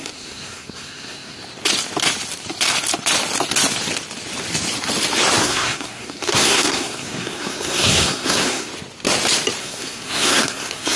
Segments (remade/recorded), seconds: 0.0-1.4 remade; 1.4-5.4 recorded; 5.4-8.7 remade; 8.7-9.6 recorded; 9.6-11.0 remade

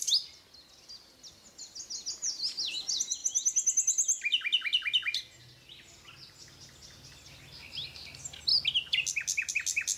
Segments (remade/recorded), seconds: 0.0-10.0 recorded

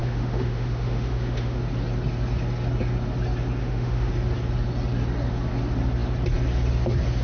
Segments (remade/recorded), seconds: 0.0-1.6 remade; 1.6-3.6 recorded; 3.6-4.1 remade; 4.1-7.2 recorded

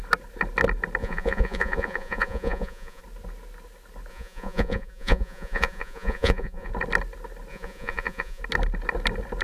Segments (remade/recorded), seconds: 0.0-1.0 recorded; 1.0-3.0 remade; 3.0-4.1 recorded; 4.1-6.7 remade; 6.7-7.5 recorded; 7.5-8.4 remade; 8.4-9.4 recorded

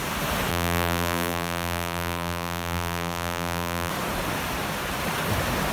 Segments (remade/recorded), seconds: 0.0-0.5 recorded; 0.5-3.9 remade; 3.9-5.7 recorded

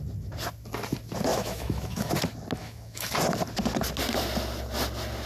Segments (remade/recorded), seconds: 0.0-1.3 recorded; 1.3-2.1 remade; 2.1-2.6 recorded; 2.6-3.1 remade; 3.1-5.3 recorded